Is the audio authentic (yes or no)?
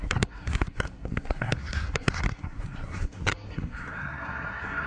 no